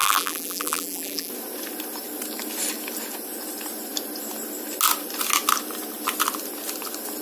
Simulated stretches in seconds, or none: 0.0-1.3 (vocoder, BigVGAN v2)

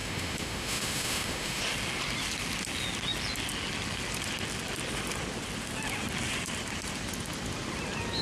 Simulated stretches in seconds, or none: 0.0-1.6 (autoencoder, DAC-VAE)

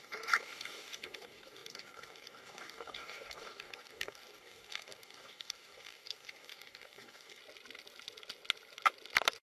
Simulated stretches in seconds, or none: 0.0-7.4 (codec, DAC)

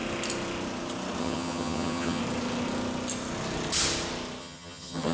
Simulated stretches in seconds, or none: 1.2-2.2 (vocoder, HiFi-GAN); 4.4-5.1

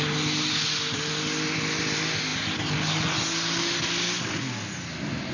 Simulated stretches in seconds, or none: none

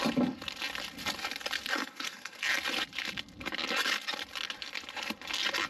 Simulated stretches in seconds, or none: 1.7-2.4 (codec, SNAC)

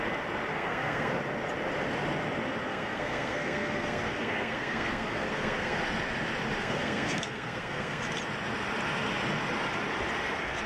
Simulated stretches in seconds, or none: 0.5-1.1 (codec, SNAC); 2.7-5.8; 6.6-8.0

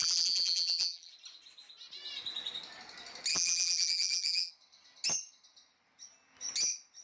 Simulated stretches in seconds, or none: 0.0-1.1 (vocoder, BigVGAN v2); 3.3-4.5